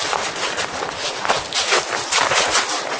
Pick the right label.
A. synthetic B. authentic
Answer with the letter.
B